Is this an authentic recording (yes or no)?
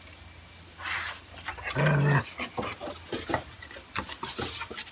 yes